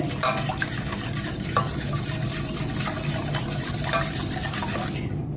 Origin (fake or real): real